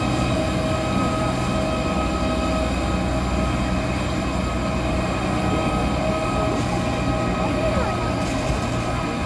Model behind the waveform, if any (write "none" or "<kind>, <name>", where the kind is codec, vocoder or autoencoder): none